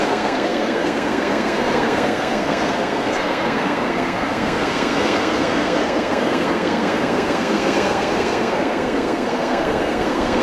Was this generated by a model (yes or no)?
yes